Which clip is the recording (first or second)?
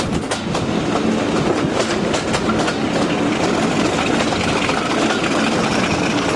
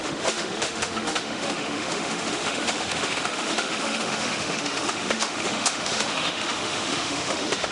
first